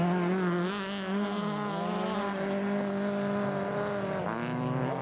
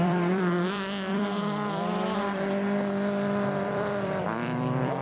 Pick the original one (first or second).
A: first